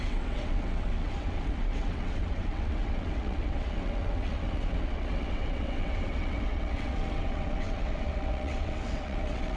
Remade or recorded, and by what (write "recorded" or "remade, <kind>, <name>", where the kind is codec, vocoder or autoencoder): remade, vocoder, WaveNeXt